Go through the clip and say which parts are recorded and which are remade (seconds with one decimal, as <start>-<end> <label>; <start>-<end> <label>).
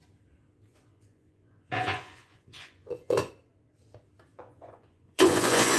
0.0-0.7 recorded; 0.7-3.3 remade; 3.3-4.3 recorded; 4.3-5.8 remade